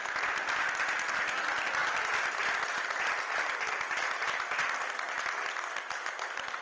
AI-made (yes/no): no